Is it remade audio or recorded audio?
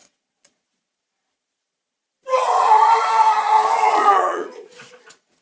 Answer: remade